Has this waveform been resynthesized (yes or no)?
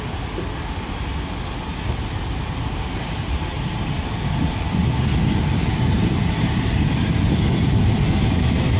no